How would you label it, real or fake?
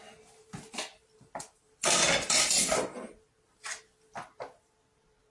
fake